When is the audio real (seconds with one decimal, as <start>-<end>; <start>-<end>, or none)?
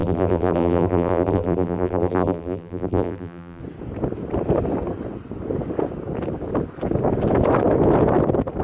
3.6-8.6